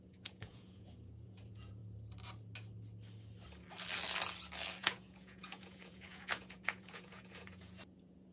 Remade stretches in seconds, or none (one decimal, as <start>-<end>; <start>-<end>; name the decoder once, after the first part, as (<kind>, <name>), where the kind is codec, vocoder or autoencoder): 0.0-1.8 (vocoder, Vocos); 4.8-8.3